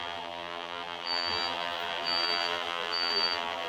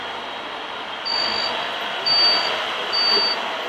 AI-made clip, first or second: first